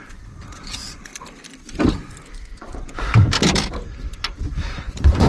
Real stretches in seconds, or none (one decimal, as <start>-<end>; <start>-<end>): 1.1-2.3; 3.1-3.9